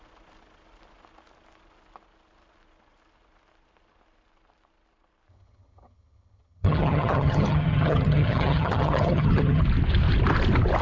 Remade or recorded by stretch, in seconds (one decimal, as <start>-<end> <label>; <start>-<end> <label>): 0.0-5.3 recorded; 5.3-9.6 remade; 9.6-10.8 recorded